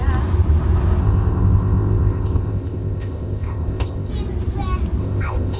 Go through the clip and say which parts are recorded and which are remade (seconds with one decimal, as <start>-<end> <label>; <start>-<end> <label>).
0.0-1.0 recorded; 1.0-4.1 remade; 4.1-5.0 recorded; 5.0-5.6 remade